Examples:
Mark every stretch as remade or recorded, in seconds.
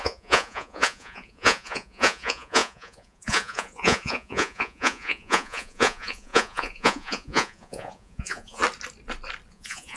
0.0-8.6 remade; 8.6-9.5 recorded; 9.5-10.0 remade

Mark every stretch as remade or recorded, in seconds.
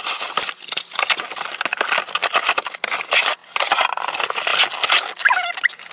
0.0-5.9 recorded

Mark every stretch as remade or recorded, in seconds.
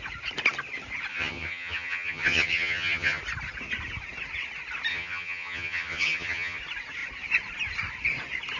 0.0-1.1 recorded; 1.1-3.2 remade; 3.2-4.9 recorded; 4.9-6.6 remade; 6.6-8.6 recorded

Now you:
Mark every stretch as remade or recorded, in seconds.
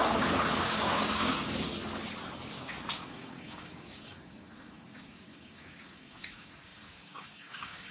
0.0-1.7 remade; 1.7-2.5 recorded; 2.5-7.9 remade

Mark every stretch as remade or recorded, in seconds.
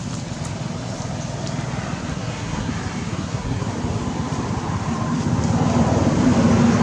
0.0-2.1 recorded; 2.1-2.7 remade; 2.7-3.1 recorded; 3.1-3.7 remade; 3.7-6.8 recorded